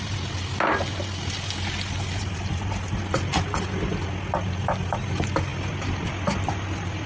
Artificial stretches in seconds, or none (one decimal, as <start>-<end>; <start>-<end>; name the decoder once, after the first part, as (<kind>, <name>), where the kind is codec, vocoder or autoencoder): none